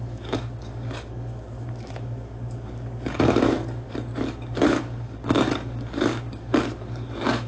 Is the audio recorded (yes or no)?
no